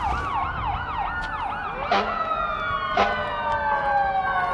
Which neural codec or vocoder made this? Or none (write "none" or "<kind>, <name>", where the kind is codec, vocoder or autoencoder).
none